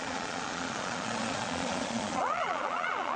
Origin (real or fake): fake